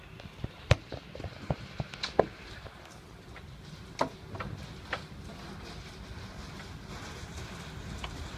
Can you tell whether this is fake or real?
real